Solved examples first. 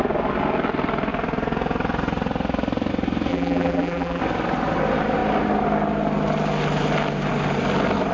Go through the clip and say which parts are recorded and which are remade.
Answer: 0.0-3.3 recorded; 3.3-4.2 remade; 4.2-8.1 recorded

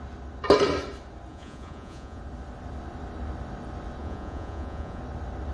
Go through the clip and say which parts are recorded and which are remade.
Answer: 0.0-1.3 recorded; 1.3-2.2 remade; 2.2-4.0 recorded; 4.0-5.0 remade; 5.0-5.5 recorded

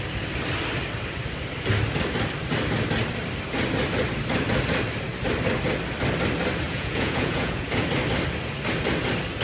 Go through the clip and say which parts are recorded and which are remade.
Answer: 0.0-6.7 recorded; 6.7-7.9 remade; 7.9-9.4 recorded

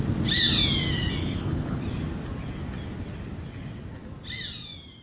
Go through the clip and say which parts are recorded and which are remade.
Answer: 0.0-1.2 recorded; 1.2-1.8 remade; 1.8-5.0 recorded

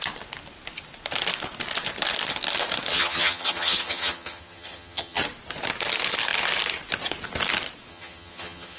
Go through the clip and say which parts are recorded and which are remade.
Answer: 0.0-2.9 recorded; 2.9-5.2 remade; 5.2-7.9 recorded; 7.9-8.8 remade

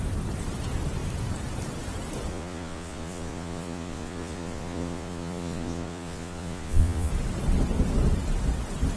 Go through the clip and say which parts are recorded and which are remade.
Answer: 0.0-2.3 recorded; 2.3-7.1 remade; 7.1-9.0 recorded

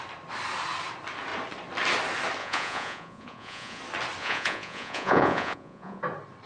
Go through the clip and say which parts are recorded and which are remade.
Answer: 0.0-2.4 recorded; 2.4-3.8 remade; 3.8-4.2 recorded; 4.2-6.0 remade; 6.0-6.5 recorded